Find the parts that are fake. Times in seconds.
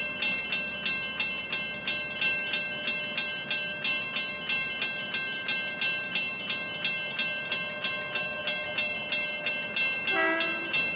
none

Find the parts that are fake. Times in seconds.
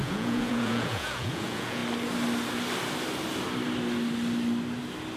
0.0-1.8 (vocoder, Vocos)